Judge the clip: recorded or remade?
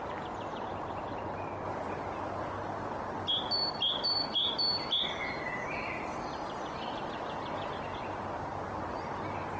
recorded